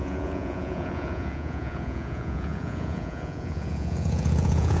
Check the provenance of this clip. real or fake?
fake